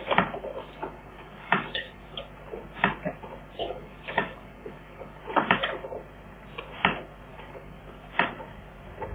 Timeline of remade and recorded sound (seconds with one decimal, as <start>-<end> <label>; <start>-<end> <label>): 0.0-0.6 recorded; 0.6-2.2 remade; 2.2-3.6 recorded; 3.6-5.2 remade; 5.2-7.3 recorded; 7.3-7.8 remade; 7.8-9.1 recorded

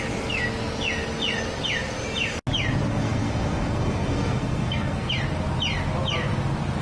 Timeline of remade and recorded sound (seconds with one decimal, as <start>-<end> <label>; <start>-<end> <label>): 0.0-2.9 recorded; 2.9-5.1 remade; 5.1-6.8 recorded

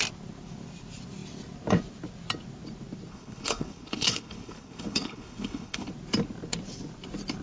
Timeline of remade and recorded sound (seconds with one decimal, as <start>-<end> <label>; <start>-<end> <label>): 0.0-3.1 recorded; 3.1-5.9 remade; 5.9-7.4 recorded

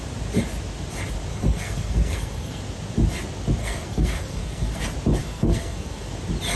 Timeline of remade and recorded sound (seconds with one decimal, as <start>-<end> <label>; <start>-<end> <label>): 0.0-1.3 recorded; 1.3-2.6 remade; 2.6-3.6 recorded; 3.6-4.8 remade; 4.8-5.2 recorded; 5.2-6.1 remade; 6.1-6.6 recorded